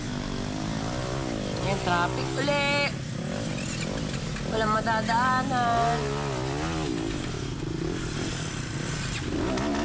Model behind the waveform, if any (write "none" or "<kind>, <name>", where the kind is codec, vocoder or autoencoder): none